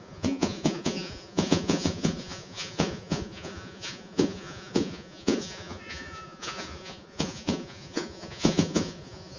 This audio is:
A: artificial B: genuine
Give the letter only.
A